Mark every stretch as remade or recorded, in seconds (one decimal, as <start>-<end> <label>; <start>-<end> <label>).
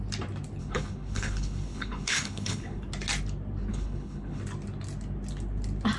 0.0-0.6 recorded; 0.6-2.8 remade; 2.8-3.7 recorded; 3.7-4.4 remade; 4.4-6.0 recorded